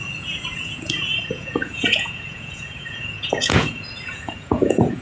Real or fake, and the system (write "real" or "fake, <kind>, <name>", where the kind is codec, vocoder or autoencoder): fake, vocoder, Vocos